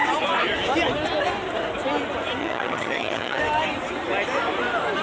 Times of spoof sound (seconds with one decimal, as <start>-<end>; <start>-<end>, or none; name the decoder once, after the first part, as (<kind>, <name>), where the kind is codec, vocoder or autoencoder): 2.4-3.4 (vocoder, HiFi-GAN)